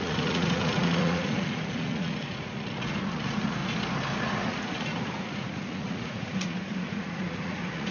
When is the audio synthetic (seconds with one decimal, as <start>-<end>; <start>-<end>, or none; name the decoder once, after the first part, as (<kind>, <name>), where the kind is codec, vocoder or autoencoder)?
0.0-3.6 (vocoder, Vocos); 4.2-7.9